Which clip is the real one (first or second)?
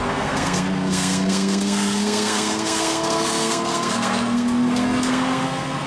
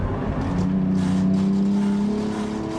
second